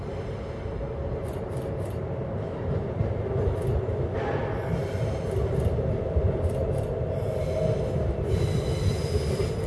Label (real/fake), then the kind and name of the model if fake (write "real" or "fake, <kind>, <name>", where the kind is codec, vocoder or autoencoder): real